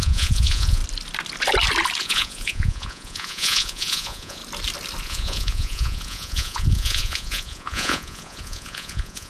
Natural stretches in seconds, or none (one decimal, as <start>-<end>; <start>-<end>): 0.8-2.0; 4.4-5.0